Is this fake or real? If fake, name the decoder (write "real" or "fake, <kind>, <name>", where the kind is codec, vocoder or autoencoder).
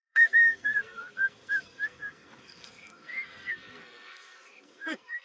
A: fake, codec, SNAC